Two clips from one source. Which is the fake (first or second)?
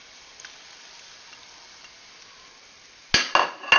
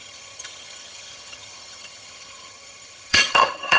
second